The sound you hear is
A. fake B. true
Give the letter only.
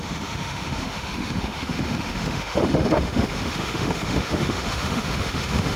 A